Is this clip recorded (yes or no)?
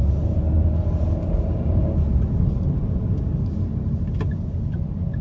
yes